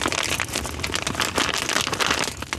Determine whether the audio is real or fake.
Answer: real